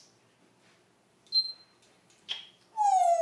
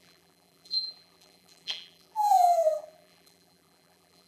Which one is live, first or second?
first